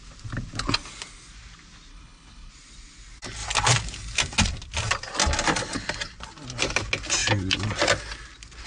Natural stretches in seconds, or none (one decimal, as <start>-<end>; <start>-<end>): 0.0-1.9; 2.5-8.7